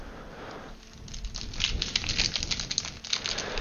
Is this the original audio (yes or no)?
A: yes